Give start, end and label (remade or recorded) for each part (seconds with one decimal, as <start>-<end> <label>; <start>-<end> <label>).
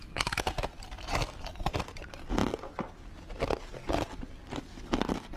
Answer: 0.0-5.4 recorded